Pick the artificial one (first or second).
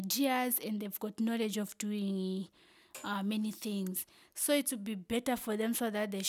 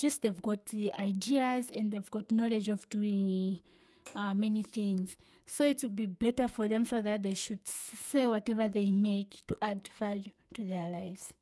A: second